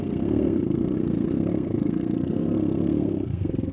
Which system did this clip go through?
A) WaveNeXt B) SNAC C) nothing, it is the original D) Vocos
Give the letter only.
B